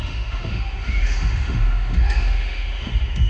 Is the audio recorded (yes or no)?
no